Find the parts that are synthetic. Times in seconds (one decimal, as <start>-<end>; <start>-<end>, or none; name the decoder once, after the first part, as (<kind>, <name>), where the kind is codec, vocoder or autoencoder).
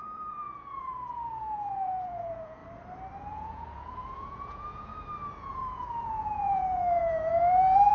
0.0-2.6 (vocoder, Vocos); 3.3-4.9; 5.4-7.9